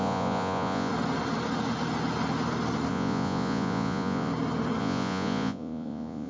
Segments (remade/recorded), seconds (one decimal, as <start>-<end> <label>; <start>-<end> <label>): 0.0-0.9 remade; 0.9-2.9 recorded; 2.9-4.3 remade; 4.3-4.8 recorded; 4.8-6.3 remade